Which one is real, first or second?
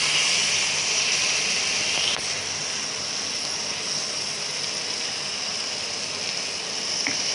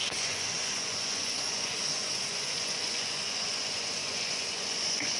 first